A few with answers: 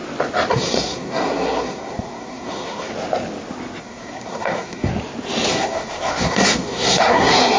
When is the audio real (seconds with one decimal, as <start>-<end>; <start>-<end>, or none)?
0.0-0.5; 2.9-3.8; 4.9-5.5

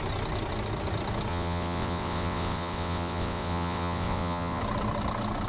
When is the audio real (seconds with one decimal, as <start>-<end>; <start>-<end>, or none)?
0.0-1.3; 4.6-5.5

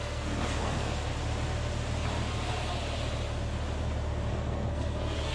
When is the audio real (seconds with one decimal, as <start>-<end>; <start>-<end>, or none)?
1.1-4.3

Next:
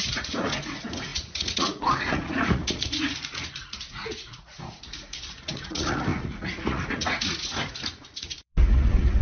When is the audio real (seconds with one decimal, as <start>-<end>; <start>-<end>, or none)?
none

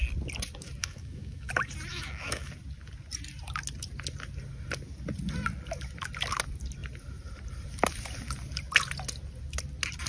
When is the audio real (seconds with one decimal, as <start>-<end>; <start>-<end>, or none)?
0.0-0.8; 1.5-1.9; 2.5-10.1

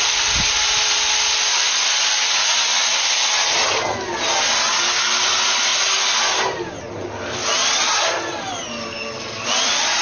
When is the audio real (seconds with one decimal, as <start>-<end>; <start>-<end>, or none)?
0.0-10.0